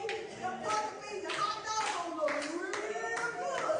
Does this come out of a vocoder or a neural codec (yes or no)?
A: yes